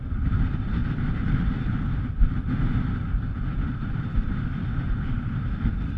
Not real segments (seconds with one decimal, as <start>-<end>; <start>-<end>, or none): none